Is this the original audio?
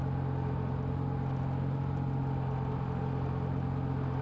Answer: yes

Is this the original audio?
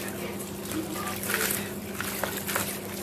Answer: yes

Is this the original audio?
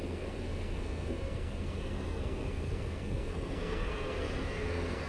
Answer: no